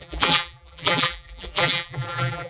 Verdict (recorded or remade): remade